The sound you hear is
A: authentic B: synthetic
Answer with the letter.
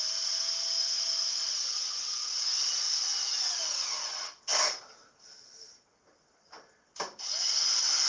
A